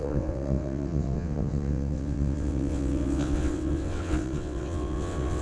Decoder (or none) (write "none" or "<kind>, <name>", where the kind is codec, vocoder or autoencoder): vocoder, WaveNeXt